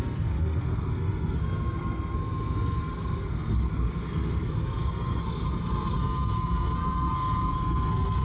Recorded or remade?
remade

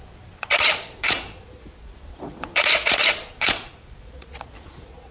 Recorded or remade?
remade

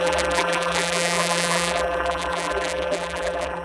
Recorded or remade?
remade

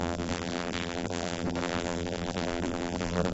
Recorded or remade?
remade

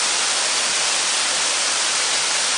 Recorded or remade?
recorded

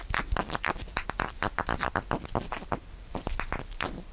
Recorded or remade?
remade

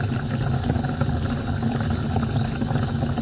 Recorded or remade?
recorded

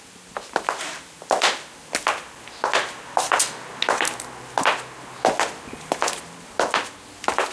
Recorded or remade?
recorded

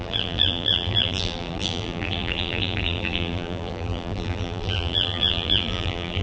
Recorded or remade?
remade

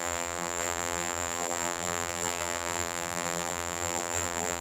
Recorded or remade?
remade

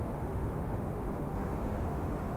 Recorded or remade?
remade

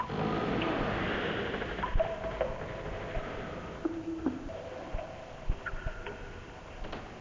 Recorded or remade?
recorded